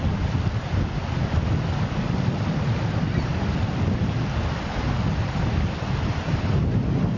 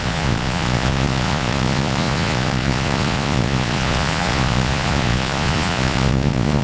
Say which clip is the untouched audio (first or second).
first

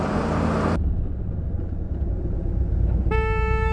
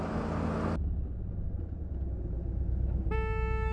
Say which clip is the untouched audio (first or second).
second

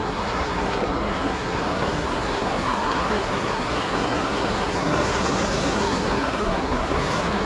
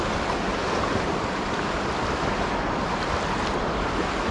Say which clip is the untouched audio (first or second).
second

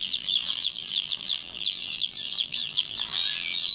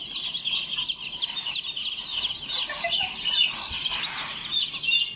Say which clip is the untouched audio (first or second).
second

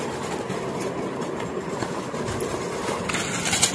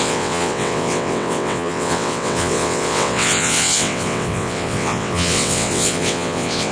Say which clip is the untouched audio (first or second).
first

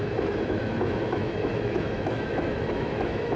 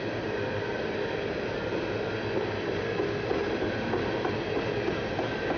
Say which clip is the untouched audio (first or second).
second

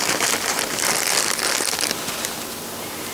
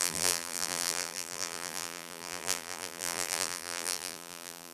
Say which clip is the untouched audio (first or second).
first